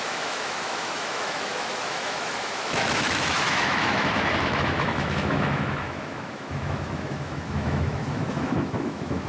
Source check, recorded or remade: remade